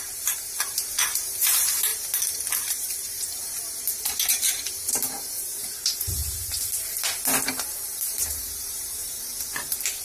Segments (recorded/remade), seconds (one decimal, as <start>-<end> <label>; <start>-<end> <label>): 0.0-6.2 remade; 6.2-7.5 recorded; 7.5-9.3 remade; 9.3-10.0 recorded